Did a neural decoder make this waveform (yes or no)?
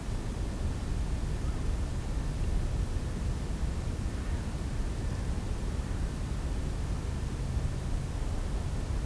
no